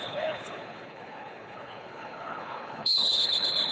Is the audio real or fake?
fake